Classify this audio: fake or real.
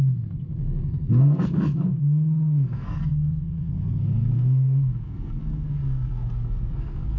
fake